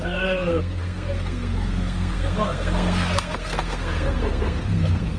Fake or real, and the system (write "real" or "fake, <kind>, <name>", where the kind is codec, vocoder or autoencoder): fake, codec, SNAC